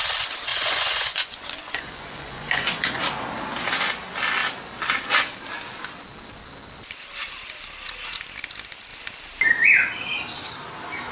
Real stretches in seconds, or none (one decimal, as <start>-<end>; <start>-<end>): 0.0-0.5; 3.0-11.1